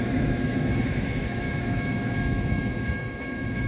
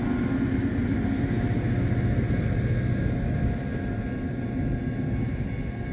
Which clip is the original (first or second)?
second